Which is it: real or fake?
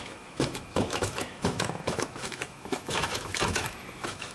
fake